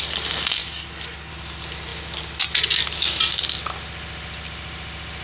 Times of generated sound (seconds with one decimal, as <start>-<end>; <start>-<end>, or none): 0.6-1.3